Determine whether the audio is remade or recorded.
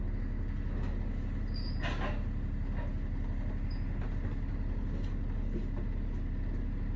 recorded